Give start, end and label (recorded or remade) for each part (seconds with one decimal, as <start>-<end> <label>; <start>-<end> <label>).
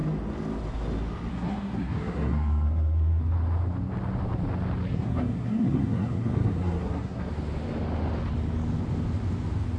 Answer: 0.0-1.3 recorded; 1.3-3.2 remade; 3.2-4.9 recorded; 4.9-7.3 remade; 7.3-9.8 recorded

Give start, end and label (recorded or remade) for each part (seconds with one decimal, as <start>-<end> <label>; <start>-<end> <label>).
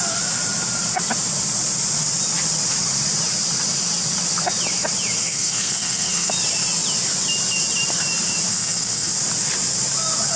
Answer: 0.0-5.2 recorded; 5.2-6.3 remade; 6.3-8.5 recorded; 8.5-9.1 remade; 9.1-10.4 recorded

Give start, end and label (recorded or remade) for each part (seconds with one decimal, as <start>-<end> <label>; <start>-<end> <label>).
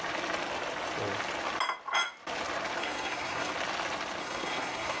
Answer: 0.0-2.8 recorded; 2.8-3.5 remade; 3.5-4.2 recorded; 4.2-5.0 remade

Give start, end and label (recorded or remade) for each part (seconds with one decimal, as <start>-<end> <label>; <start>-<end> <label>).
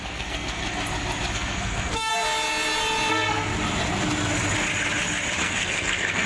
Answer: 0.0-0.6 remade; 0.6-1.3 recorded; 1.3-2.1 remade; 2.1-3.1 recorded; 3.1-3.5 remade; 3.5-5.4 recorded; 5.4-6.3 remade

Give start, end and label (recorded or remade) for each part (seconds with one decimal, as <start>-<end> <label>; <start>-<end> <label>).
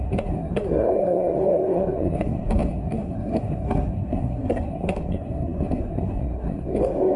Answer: 0.0-7.2 remade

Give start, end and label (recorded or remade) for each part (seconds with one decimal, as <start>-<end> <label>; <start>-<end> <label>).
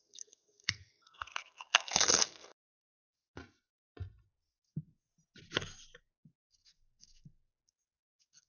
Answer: 0.0-3.4 remade; 3.4-4.5 recorded; 4.5-5.1 remade; 5.1-6.0 recorded; 6.0-8.5 remade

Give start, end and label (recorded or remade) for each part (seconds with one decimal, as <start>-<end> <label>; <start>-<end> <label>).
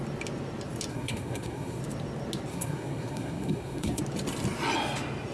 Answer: 0.0-0.9 recorded; 0.9-1.8 remade; 1.8-2.5 recorded; 2.5-4.0 remade; 4.0-5.3 recorded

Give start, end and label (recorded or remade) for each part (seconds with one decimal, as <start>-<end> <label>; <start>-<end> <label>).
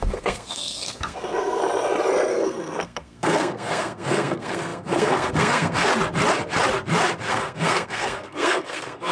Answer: 0.0-1.6 remade; 1.6-2.3 recorded; 2.3-5.9 remade; 5.9-7.3 recorded; 7.3-9.1 remade